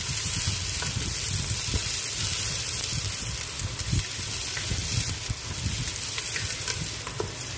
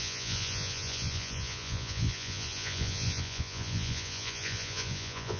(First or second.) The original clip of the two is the first